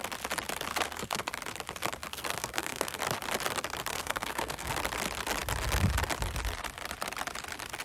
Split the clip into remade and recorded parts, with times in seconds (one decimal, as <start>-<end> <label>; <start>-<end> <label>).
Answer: 0.0-0.7 recorded; 0.7-1.3 remade; 1.3-2.1 recorded; 2.1-3.0 remade; 3.0-3.9 recorded; 3.9-4.7 remade; 4.7-7.8 recorded